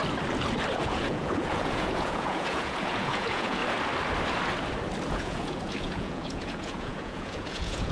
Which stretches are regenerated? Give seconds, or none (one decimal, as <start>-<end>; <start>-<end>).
0.7-3.6; 5.1-7.9